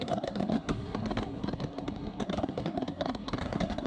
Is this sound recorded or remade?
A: remade